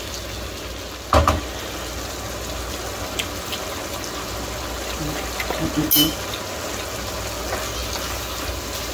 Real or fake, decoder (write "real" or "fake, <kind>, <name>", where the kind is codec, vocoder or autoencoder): real